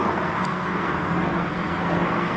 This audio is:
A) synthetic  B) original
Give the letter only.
A